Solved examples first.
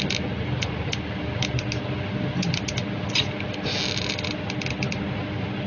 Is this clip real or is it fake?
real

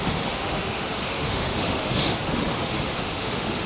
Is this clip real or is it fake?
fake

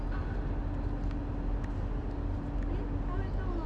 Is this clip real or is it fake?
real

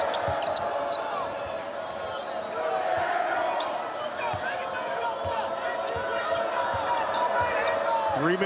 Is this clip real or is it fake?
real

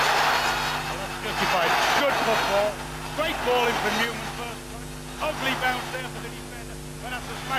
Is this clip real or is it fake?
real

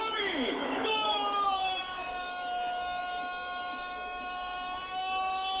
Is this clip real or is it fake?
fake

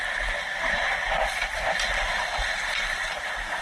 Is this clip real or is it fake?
real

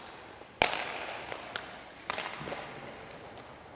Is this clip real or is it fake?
real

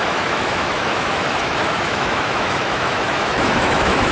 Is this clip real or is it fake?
fake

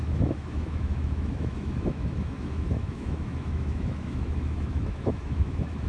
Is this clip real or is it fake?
fake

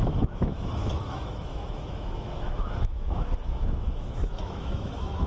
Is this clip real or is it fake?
fake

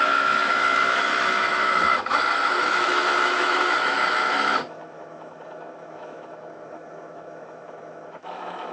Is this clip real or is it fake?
fake